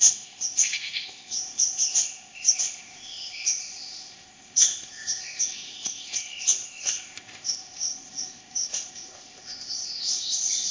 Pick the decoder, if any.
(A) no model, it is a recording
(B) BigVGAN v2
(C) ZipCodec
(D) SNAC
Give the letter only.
C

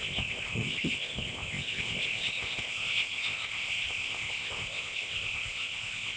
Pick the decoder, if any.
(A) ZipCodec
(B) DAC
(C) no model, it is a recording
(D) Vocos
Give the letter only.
A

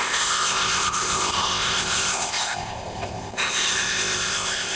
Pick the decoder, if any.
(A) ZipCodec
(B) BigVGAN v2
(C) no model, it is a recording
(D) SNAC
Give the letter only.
A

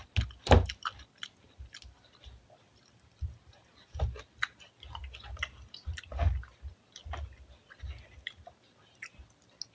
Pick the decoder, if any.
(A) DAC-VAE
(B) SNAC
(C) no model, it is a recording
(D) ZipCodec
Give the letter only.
C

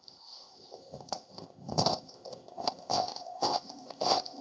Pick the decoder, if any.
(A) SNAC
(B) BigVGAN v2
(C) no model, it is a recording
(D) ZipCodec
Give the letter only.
D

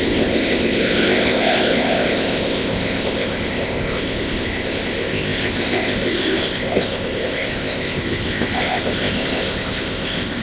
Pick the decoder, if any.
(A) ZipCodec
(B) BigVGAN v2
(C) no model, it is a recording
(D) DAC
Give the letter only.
A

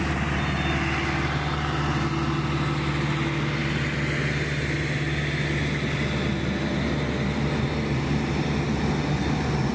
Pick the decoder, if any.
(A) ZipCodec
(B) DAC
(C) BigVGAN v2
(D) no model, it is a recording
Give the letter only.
D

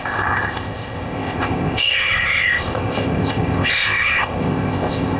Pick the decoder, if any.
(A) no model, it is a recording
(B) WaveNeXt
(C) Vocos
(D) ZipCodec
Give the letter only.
D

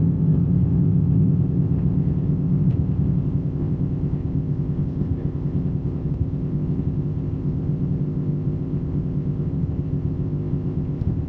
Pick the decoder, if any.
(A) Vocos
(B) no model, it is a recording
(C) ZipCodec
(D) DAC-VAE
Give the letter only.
C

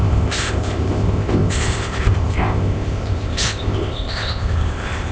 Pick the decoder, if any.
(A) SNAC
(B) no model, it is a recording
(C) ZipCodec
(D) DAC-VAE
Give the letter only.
C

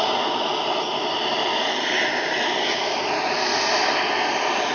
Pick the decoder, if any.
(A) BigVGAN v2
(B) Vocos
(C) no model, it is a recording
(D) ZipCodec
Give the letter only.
C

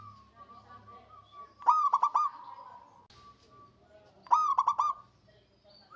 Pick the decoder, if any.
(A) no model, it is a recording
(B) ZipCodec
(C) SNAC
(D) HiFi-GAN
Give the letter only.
A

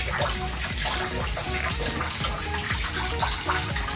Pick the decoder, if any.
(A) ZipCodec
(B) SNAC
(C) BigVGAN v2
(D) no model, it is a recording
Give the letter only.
D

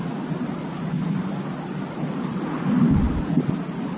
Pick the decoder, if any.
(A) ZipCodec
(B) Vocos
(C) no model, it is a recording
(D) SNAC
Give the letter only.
C